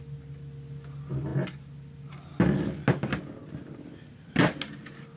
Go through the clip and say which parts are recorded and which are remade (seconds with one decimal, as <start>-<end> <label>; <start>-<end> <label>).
0.0-5.2 recorded

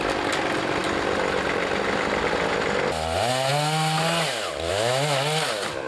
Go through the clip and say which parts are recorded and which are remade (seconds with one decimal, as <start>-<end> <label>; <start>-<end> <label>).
0.0-5.9 recorded

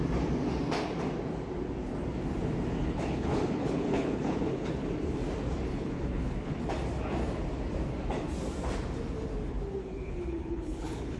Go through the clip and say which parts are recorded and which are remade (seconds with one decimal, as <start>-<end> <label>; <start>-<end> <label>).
0.0-2.8 recorded; 2.8-4.9 remade; 4.9-5.7 recorded; 5.7-6.6 remade; 6.6-9.8 recorded; 9.8-11.2 remade